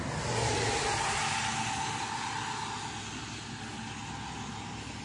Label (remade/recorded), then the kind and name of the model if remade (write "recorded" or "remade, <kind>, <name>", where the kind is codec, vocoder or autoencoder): recorded